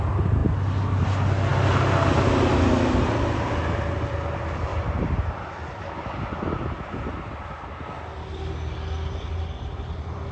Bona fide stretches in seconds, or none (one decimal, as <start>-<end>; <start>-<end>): 0.0-10.3